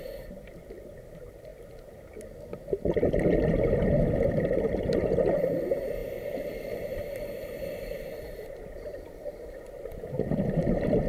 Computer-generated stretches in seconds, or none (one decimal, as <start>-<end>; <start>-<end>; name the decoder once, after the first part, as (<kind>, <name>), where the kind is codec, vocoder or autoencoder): 0.0-1.5 (vocoder, BigVGAN v2); 4.2-11.1